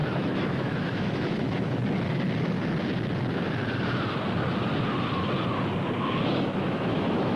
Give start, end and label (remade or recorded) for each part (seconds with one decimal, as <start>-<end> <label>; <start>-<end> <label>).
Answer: 0.0-1.8 remade; 1.8-6.2 recorded; 6.2-7.4 remade